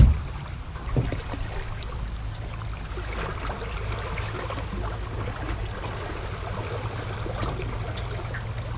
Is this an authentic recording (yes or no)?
yes